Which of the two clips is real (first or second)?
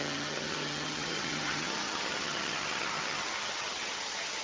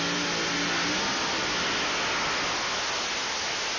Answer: second